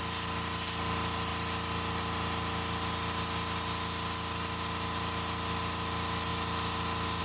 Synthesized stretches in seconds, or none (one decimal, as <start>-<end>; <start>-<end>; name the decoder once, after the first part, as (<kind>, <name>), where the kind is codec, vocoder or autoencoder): none